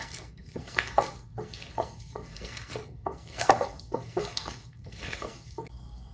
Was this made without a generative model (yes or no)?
no